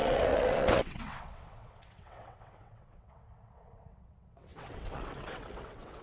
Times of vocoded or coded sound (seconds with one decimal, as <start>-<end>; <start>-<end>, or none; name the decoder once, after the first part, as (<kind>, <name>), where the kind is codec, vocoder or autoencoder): 0.0-6.0 (vocoder, WaveNeXt)